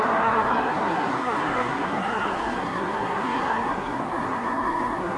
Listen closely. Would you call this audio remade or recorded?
remade